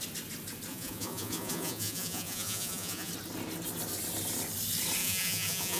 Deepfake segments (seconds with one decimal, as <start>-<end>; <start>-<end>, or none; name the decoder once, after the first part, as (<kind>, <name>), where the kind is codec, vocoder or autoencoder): 0.7-3.1 (vocoder, Vocos); 5.0-5.8